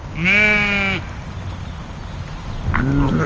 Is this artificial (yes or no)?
no